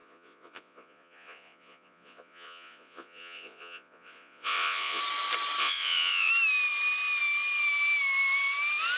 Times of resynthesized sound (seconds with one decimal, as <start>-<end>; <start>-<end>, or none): 0.0-5.0; 5.6-6.3